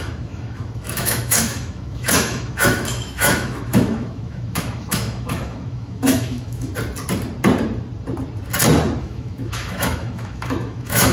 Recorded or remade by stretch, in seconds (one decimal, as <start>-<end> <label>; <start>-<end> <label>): 0.0-6.7 remade; 6.7-9.0 recorded; 9.0-11.1 remade